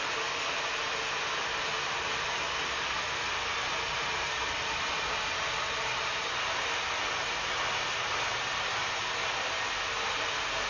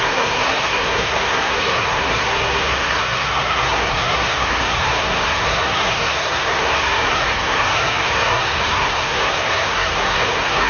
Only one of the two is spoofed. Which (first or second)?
second